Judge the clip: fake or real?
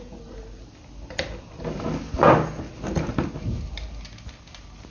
real